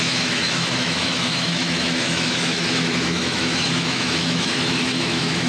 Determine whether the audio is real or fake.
fake